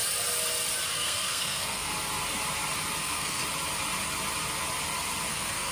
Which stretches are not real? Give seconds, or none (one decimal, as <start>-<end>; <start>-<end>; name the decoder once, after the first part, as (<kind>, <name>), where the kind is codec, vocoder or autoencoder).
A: 0.9-1.9 (codec, SNAC); 3.0-3.4; 5.3-5.7